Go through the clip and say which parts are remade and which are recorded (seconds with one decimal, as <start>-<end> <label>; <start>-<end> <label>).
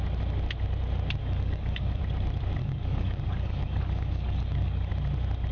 0.0-1.2 recorded; 1.2-2.0 remade; 2.0-2.6 recorded; 2.6-4.9 remade; 4.9-5.5 recorded